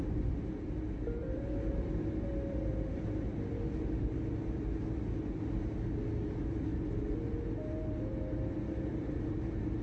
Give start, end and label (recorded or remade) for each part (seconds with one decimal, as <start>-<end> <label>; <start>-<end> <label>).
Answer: 0.0-9.8 recorded